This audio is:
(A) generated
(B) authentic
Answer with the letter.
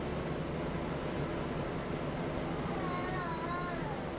B